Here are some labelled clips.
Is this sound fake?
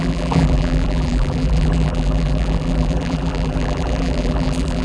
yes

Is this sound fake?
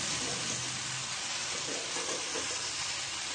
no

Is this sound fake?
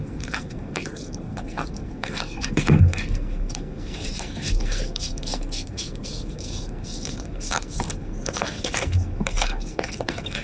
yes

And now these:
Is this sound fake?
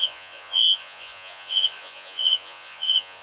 yes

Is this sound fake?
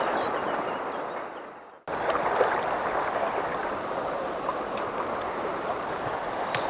no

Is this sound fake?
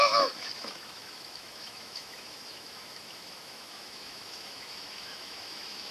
yes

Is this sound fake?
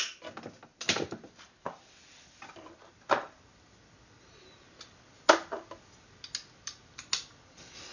no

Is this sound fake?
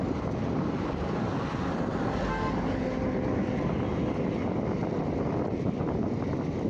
no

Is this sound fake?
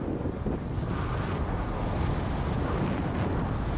no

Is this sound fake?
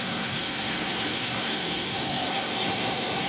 yes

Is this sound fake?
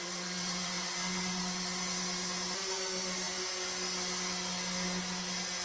no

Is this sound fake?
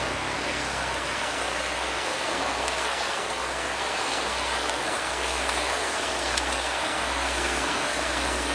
yes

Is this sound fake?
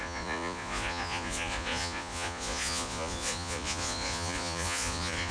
yes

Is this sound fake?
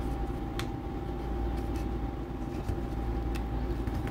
no